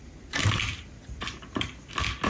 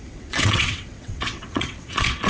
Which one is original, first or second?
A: first